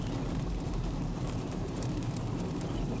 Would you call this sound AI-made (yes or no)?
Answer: yes